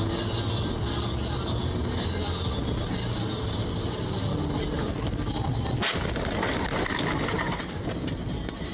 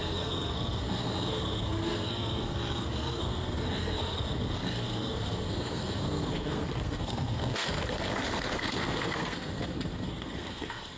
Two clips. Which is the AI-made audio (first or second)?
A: second